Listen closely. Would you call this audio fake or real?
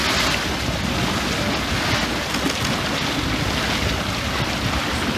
real